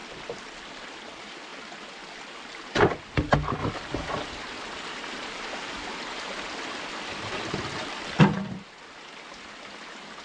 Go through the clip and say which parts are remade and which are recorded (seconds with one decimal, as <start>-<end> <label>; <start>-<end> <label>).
0.0-10.2 recorded